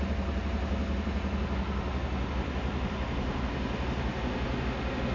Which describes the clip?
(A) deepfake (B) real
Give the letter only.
B